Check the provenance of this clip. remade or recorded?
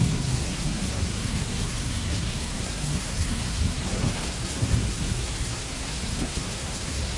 remade